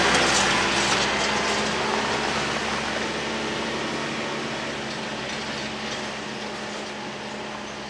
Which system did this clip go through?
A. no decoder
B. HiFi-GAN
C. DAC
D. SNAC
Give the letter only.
A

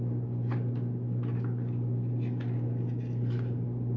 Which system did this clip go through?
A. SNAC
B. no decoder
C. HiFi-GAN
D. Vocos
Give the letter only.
B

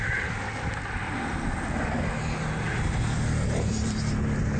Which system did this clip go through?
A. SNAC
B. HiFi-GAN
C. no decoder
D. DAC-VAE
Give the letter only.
C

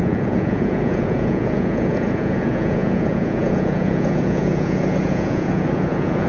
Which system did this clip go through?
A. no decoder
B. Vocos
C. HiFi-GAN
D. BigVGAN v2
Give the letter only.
B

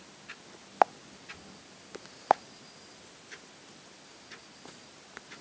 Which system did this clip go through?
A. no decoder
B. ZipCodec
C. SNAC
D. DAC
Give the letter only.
A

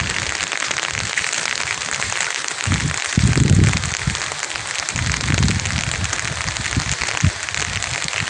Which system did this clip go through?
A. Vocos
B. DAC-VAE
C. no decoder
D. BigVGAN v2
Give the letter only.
C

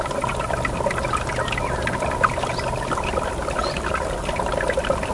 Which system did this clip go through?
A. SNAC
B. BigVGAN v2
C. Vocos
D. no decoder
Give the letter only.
D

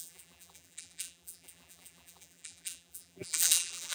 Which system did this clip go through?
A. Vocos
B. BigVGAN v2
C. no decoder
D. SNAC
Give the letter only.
B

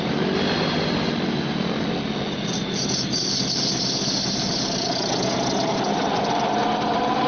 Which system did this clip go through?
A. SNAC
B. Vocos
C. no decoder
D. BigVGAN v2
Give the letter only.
C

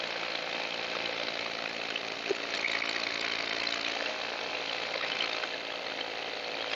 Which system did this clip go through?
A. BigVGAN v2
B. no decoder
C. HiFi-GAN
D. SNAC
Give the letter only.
B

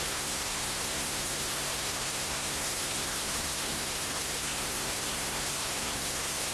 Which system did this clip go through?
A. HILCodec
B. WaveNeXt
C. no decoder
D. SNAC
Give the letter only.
D